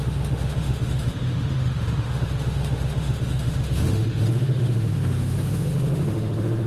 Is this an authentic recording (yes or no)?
no